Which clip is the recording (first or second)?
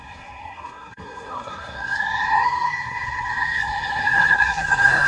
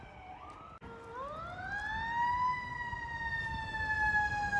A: second